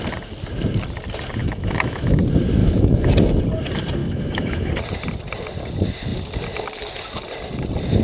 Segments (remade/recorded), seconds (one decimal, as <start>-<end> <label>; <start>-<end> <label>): 0.0-1.4 recorded; 1.4-2.2 remade; 2.2-2.6 recorded; 2.6-3.1 remade; 3.1-4.0 recorded; 4.0-4.7 remade; 4.7-8.0 recorded